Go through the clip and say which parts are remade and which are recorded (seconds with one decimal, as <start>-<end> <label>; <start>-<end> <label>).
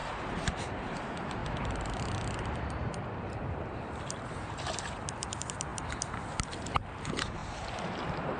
0.0-1.4 remade; 1.4-3.2 recorded; 3.2-8.4 remade